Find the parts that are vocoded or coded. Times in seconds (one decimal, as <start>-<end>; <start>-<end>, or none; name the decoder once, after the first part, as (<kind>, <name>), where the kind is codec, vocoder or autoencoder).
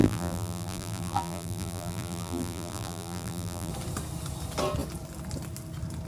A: 0.0-3.7 (vocoder, BigVGAN v2)